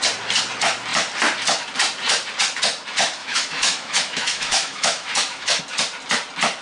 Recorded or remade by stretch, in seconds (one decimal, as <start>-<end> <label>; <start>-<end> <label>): 0.0-3.2 recorded; 3.2-5.6 remade; 5.6-6.6 recorded